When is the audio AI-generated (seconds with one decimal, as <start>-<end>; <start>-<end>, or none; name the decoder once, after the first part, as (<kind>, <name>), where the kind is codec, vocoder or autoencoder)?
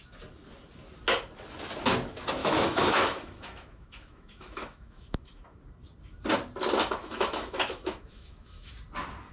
2.4-5.6 (autoencoder, DAC-VAE); 7.0-8.7